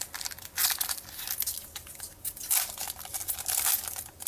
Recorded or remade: recorded